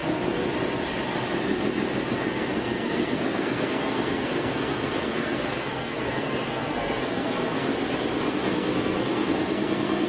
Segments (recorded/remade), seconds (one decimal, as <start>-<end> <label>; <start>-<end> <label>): 0.0-2.1 recorded; 2.1-7.7 remade; 7.7-8.3 recorded; 8.3-10.1 remade